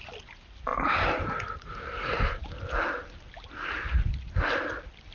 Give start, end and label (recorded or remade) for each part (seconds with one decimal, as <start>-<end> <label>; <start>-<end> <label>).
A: 0.0-5.1 recorded